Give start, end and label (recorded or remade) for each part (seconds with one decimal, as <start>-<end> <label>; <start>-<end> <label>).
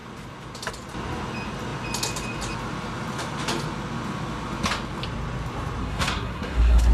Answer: 0.0-5.8 recorded; 5.8-6.9 remade